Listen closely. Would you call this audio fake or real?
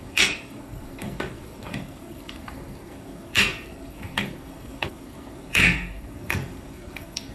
fake